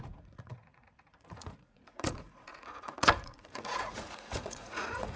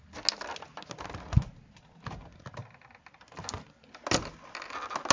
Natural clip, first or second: second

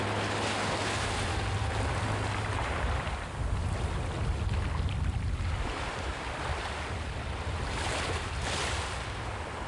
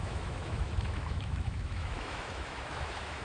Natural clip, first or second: first